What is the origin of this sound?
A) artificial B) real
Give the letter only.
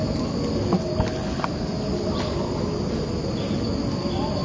B